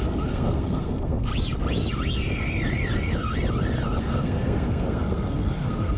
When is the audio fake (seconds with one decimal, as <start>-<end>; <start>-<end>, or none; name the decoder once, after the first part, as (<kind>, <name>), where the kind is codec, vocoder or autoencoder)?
0.0-1.3 (codec, SNAC); 4.0-6.0